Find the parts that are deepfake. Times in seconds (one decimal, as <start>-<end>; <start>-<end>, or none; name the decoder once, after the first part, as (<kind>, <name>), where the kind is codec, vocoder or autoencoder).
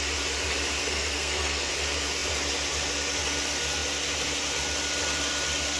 0.8-1.7 (codec, SNAC)